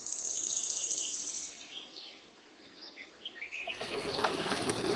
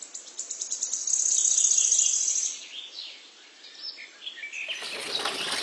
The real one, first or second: second